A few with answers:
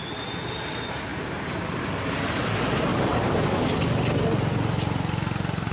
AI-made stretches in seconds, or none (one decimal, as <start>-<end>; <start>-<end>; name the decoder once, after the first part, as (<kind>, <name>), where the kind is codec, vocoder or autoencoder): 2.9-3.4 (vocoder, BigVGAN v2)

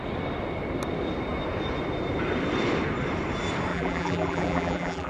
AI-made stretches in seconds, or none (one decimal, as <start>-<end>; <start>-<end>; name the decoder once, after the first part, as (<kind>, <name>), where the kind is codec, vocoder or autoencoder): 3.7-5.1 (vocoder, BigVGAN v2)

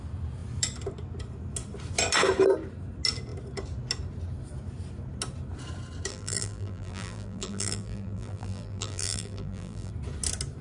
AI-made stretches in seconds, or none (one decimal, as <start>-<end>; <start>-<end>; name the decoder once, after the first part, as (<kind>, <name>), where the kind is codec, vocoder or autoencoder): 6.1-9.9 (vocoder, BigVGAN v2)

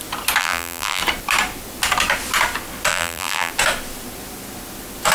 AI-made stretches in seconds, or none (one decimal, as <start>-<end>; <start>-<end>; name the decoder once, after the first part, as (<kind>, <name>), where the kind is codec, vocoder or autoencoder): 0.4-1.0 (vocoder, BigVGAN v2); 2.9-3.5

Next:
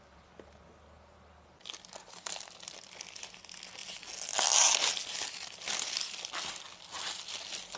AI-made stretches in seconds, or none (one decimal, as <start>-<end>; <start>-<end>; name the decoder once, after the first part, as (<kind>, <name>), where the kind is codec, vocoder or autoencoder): none

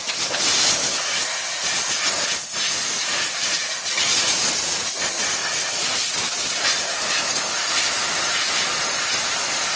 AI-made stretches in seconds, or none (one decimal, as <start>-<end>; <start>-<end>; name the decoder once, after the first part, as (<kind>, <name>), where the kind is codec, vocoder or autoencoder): 0.0-9.8 (vocoder, BigVGAN v2)

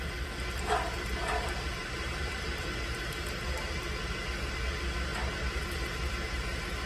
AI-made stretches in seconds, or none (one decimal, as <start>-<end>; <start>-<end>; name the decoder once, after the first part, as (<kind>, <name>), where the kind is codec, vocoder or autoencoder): 1.8-2.6 (vocoder, BigVGAN v2)

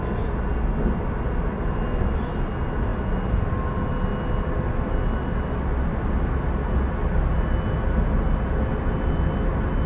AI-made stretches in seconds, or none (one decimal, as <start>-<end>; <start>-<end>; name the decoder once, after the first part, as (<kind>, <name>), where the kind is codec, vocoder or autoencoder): none